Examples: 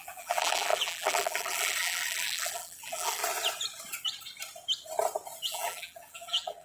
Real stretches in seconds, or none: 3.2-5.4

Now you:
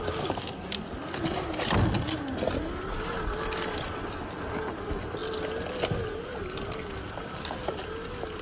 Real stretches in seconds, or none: 0.0-8.4

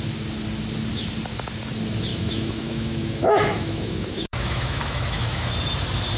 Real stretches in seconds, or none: 0.0-2.1; 5.5-6.2

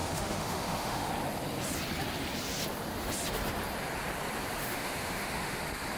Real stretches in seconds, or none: 1.1-4.6; 5.6-6.0

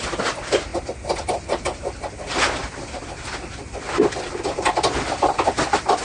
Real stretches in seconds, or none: 0.0-6.0

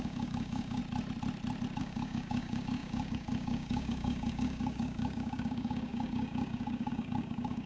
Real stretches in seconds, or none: 0.8-1.8